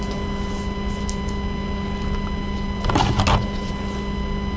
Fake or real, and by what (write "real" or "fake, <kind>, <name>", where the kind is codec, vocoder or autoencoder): real